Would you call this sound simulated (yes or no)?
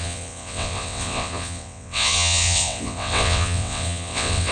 yes